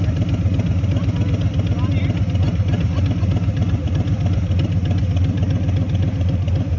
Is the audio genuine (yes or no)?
yes